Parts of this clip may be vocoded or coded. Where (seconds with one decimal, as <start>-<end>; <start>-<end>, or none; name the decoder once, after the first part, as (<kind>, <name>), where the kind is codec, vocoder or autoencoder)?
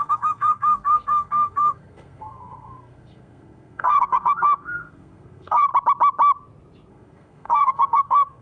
0.0-5.7 (codec, SNAC); 6.9-8.4